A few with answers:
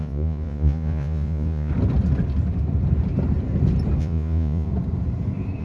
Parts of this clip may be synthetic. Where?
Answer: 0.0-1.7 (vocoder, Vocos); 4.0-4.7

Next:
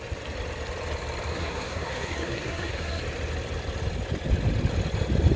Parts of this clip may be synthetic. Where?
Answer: 1.3-3.0 (codec, SNAC)

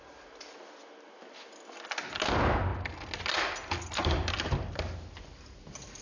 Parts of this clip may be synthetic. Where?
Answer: none

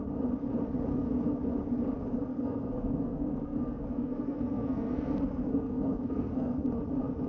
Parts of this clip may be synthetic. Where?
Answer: 0.9-1.4 (codec, SNAC); 2.3-6.7

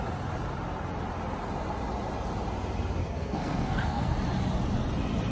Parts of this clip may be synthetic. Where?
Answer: 3.0-4.1 (codec, SNAC)